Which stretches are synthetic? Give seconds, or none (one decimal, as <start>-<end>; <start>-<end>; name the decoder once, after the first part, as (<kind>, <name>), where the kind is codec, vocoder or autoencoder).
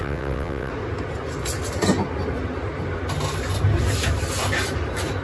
0.0-0.7 (vocoder, WaveNeXt)